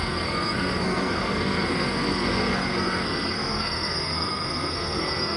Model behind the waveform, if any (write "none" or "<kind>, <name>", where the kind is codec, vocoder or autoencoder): codec, SNAC